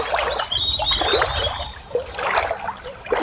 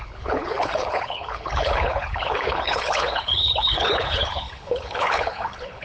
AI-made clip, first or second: second